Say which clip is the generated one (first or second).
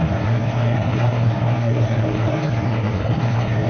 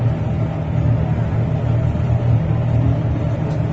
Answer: first